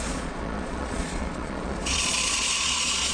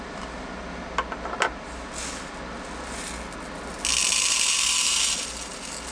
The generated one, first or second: first